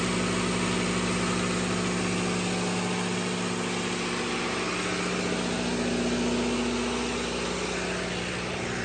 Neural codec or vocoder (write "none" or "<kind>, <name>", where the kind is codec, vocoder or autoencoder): none